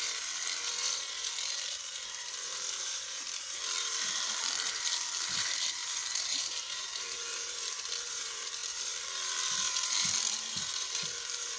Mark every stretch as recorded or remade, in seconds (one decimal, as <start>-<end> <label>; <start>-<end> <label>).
0.0-11.6 remade